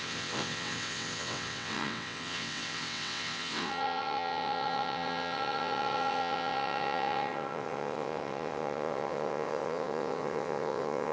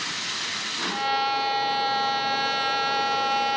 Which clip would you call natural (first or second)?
second